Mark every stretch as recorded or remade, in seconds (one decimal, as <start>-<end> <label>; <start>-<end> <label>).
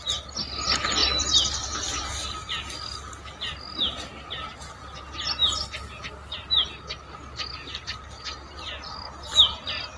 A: 0.0-10.0 recorded